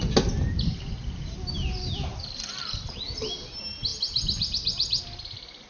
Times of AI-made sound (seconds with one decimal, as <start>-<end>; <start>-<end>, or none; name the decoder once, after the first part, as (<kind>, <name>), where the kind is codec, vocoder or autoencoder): none